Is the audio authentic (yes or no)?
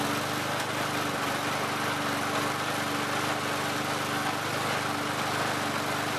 yes